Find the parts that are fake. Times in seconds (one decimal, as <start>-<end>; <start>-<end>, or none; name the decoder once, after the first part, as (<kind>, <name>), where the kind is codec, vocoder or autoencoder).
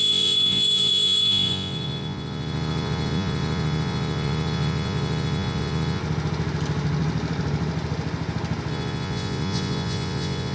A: 0.0-6.0 (vocoder, Vocos); 8.7-10.5